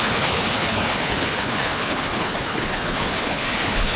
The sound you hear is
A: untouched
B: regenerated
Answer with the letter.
B